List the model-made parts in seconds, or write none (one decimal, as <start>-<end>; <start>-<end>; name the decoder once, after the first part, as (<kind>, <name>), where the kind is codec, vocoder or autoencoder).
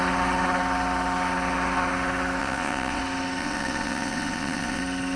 2.4-3.0 (vocoder, WaveNeXt); 3.4-4.8